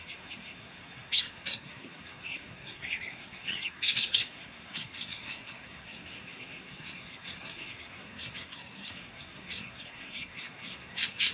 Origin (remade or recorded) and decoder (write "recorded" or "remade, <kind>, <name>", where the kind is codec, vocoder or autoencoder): remade, codec, SNAC